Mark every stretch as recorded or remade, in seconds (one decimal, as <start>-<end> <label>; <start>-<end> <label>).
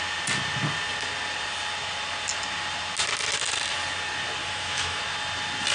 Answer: 0.0-4.4 recorded; 4.4-5.0 remade; 5.0-5.7 recorded